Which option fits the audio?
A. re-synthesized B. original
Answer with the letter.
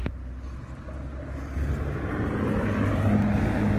B